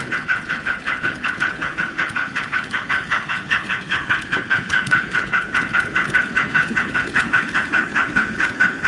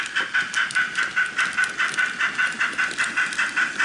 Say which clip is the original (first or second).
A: second